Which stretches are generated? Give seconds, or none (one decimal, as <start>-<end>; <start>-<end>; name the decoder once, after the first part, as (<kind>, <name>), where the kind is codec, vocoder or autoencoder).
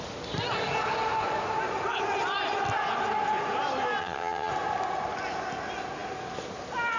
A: 4.0-4.5 (vocoder, HiFi-GAN)